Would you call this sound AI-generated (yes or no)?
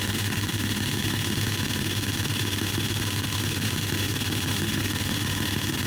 yes